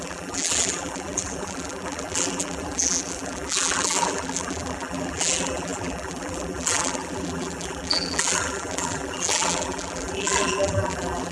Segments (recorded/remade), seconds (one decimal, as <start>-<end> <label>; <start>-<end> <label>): 0.0-11.3 remade